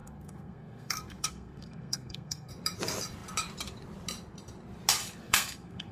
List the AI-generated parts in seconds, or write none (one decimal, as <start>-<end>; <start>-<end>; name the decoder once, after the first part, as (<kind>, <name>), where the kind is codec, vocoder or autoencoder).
0.0-2.5 (codec, SNAC); 5.2-5.9